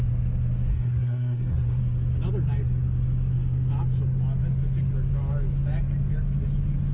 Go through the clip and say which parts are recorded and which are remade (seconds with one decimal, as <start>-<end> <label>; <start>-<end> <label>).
0.0-0.7 recorded; 0.7-1.8 remade; 1.8-6.9 recorded